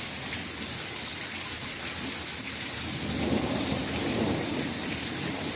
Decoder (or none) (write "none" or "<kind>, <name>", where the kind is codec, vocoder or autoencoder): none